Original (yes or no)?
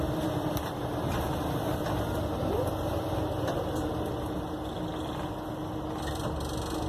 yes